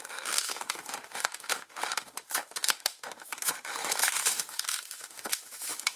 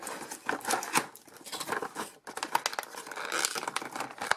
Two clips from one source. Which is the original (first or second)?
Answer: second